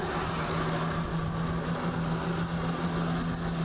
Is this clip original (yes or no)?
yes